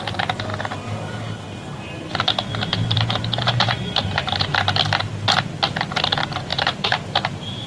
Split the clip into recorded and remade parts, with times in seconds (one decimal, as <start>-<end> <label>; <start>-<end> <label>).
0.0-2.7 recorded; 2.7-4.5 remade; 4.5-6.5 recorded; 6.5-7.7 remade